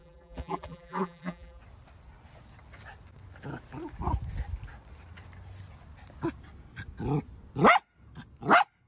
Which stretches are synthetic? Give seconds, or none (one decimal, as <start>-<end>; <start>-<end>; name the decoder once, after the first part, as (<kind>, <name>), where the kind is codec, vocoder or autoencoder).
0.0-1.6 (vocoder, BigVGAN v2)